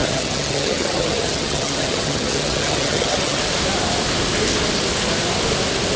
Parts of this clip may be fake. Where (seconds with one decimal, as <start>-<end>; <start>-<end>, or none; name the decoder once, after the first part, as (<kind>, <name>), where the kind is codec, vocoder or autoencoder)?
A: 0.0-3.4 (vocoder, HiFi-GAN)